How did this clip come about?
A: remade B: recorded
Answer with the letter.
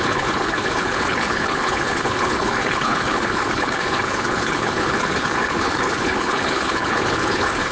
A